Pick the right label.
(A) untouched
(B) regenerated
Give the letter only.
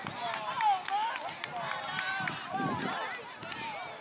A